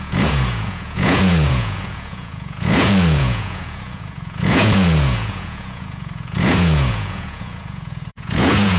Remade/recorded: remade